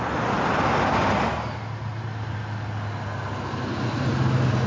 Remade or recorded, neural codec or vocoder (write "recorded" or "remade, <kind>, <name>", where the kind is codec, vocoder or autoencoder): recorded